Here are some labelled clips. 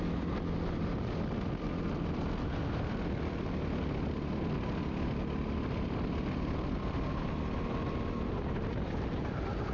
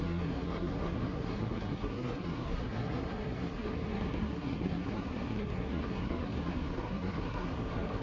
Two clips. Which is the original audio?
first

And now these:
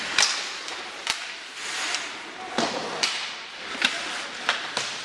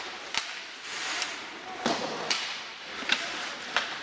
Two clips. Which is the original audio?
first